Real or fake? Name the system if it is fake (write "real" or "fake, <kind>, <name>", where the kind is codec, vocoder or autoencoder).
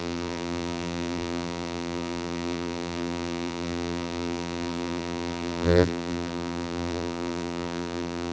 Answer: fake, vocoder, BigVGAN v2